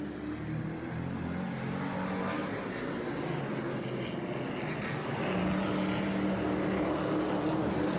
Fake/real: real